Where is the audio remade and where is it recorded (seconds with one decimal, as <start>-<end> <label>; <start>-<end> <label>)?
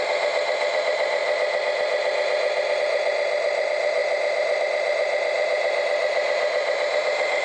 0.0-1.2 remade; 1.2-2.8 recorded; 2.8-7.4 remade